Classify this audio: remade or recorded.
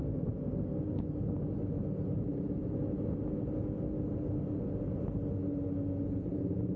recorded